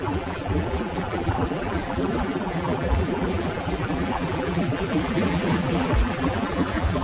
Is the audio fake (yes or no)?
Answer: yes